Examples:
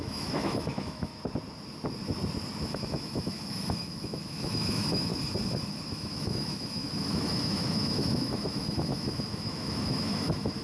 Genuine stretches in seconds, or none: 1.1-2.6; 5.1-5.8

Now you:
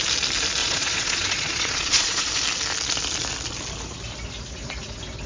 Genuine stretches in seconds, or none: 0.0-0.6; 2.3-5.3

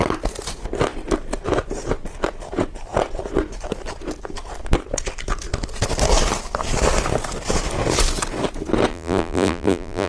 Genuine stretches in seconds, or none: 0.0-8.9

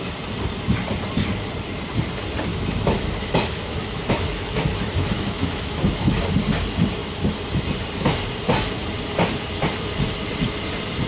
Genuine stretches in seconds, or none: 0.0-2.5; 6.2-11.1

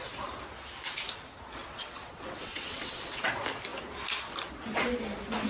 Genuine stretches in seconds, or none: 0.0-1.6; 3.3-5.5

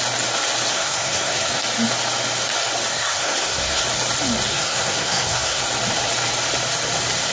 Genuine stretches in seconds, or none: 0.0-0.7; 1.5-2.9; 3.8-4.5; 5.6-7.3